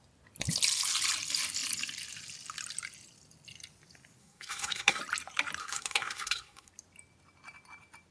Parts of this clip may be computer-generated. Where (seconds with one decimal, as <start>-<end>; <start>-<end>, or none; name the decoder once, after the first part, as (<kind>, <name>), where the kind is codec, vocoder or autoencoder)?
4.2-5.0 (codec, SNAC); 5.6-6.7

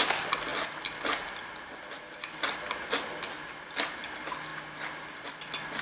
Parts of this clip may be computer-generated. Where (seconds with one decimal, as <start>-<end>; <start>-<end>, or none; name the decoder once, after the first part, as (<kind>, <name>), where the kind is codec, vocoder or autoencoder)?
none

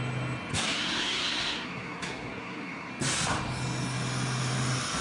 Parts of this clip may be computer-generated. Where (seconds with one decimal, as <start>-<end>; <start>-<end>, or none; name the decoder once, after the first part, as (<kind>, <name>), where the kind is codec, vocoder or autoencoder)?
0.5-2.9 (codec, SNAC)

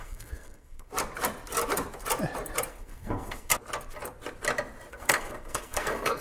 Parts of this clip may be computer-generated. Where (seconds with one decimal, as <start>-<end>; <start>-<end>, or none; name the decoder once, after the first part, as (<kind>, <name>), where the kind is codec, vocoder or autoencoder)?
0.0-0.9 (codec, SNAC); 2.7-3.5; 4.9-6.2